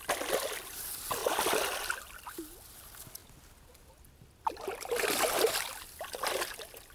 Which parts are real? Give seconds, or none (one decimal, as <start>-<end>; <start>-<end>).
0.0-6.9